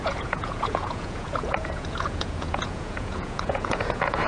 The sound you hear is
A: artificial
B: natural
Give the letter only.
A